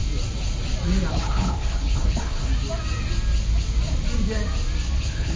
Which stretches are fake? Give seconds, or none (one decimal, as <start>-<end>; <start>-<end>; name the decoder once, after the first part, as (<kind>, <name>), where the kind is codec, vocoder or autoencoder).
1.1-2.5 (codec, HILCodec); 5.0-5.4